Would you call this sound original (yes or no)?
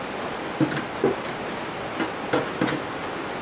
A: yes